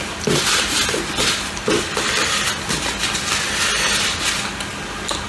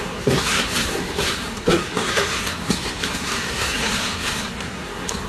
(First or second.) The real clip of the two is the first